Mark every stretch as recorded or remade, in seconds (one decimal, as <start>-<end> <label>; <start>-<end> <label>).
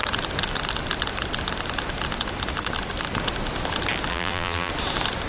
0.0-4.1 recorded; 4.1-4.7 remade; 4.7-5.3 recorded